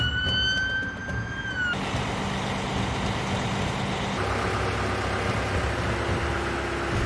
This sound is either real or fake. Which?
real